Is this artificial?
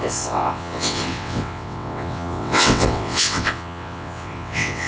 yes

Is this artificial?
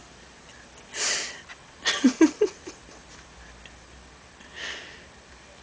no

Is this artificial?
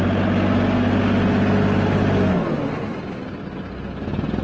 no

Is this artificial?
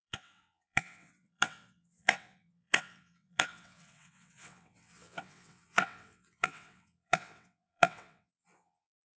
yes